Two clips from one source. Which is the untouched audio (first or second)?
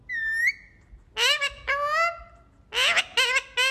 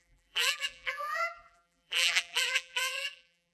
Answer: first